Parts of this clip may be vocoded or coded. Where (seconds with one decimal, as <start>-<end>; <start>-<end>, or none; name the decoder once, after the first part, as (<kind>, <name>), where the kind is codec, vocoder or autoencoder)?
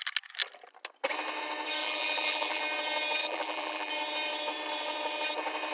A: 1.8-2.6 (vocoder, BigVGAN v2); 3.2-3.9